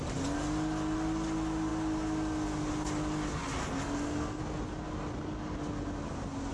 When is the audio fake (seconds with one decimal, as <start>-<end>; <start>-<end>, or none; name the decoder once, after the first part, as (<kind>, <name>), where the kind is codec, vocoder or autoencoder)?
3.6-4.4 (codec, SNAC)